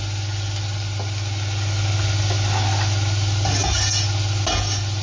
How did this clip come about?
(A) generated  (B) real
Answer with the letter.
B